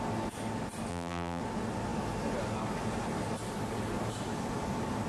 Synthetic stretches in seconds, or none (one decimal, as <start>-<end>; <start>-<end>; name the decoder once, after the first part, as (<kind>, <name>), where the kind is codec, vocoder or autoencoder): 0.9-1.4 (vocoder, BigVGAN v2)